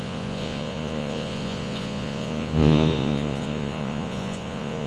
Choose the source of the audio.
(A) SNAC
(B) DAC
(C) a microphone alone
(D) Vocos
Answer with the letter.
D